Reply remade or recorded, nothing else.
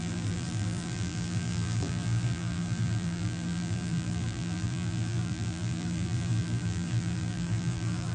remade